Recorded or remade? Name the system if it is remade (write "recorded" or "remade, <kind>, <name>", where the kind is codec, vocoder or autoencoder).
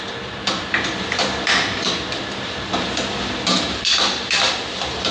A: remade, vocoder, BigVGAN v2